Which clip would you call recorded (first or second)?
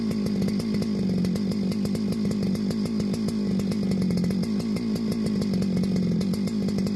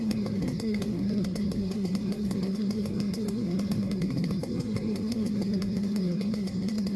first